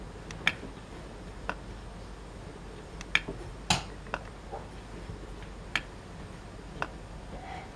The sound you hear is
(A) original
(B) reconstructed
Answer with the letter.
A